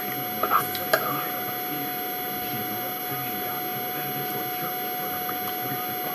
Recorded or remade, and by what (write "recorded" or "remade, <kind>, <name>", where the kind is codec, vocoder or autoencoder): recorded